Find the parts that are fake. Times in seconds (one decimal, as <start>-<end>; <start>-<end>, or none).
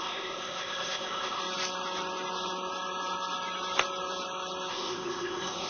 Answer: 0.0-1.4; 4.7-5.7